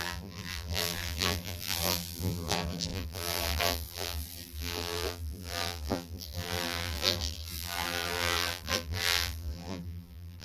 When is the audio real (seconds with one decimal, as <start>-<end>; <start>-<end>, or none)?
none